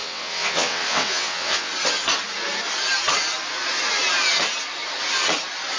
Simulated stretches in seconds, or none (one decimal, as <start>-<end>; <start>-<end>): 0.0-1.7

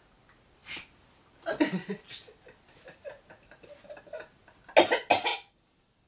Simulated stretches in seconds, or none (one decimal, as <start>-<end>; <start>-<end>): none

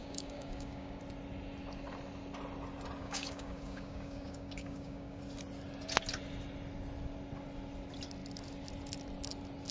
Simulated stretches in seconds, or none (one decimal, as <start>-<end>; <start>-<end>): 0.0-1.0; 3.0-5.2

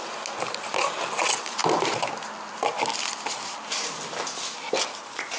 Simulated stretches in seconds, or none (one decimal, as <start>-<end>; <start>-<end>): none